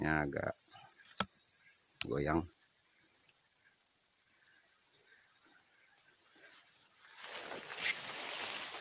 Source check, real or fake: real